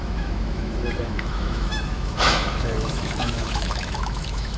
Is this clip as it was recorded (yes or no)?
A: no